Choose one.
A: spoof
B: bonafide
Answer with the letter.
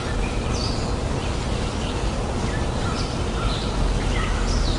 B